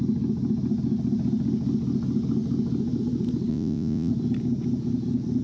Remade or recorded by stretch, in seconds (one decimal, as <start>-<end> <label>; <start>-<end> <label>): 0.0-3.5 recorded; 3.5-4.1 remade; 4.1-5.4 recorded